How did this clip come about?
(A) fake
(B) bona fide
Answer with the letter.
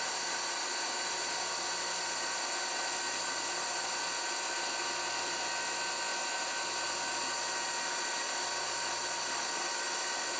B